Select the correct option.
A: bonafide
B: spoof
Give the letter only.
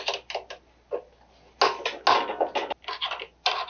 A